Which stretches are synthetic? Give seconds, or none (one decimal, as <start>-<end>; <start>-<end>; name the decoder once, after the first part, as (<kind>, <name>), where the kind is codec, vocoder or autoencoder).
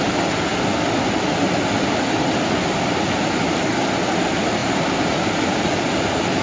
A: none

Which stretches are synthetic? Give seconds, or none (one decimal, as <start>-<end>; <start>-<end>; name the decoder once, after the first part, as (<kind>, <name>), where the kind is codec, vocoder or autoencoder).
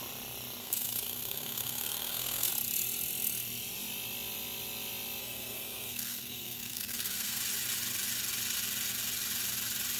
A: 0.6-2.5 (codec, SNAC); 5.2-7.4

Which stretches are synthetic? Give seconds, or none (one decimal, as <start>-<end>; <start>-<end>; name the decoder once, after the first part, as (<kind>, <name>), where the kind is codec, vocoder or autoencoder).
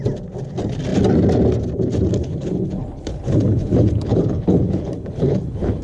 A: 2.2-5.8 (codec, HILCodec)